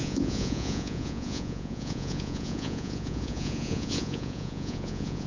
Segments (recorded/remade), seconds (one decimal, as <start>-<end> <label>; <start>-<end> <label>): 0.0-5.3 remade